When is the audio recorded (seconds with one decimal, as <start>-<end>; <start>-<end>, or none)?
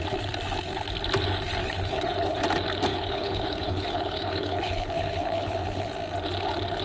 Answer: 0.0-1.6; 2.4-2.9; 5.9-6.8